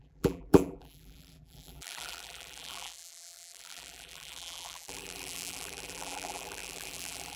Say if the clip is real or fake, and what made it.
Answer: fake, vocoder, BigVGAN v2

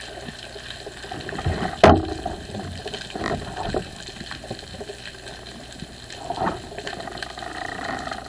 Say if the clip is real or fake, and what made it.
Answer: real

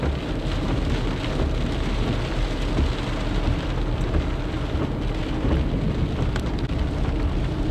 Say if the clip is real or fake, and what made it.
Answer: real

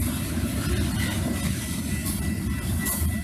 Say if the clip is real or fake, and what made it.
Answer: fake, vocoder, BigVGAN v2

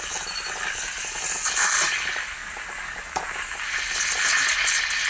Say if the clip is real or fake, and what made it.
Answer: real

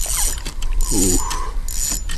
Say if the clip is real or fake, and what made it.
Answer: real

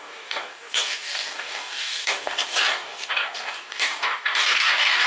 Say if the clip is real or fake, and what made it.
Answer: fake, codec, DAC